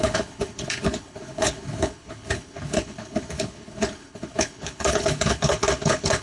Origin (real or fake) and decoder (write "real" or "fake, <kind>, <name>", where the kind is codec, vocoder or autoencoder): fake, codec, HILCodec